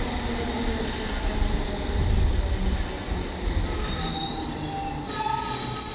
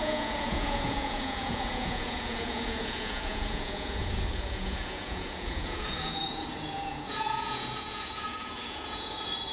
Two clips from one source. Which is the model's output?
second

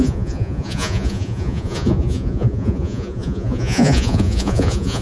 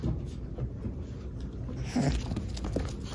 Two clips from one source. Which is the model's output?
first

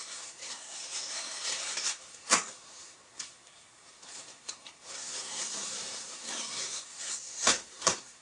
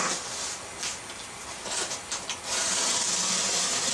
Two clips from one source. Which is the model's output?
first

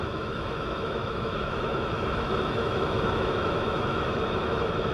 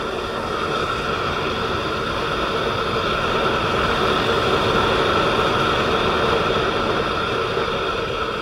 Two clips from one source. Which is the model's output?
first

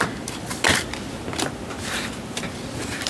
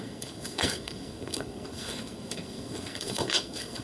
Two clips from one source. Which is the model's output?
second